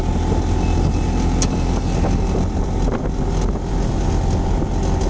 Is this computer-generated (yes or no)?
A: no